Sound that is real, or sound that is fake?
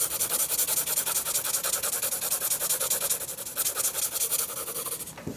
real